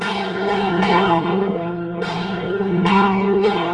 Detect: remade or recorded remade